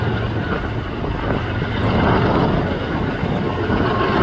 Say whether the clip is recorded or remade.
recorded